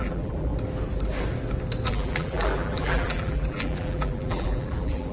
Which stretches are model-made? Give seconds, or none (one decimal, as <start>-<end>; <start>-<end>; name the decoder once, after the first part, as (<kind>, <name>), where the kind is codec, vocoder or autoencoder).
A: 0.0-0.5 (vocoder, BigVGAN v2); 1.9-5.1